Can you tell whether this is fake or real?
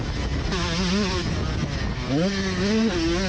real